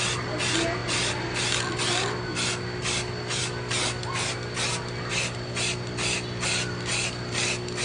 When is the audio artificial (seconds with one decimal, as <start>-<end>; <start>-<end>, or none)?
none